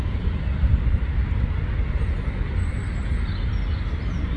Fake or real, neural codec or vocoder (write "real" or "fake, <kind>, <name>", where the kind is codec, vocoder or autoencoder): real